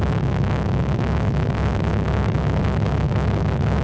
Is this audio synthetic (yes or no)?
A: yes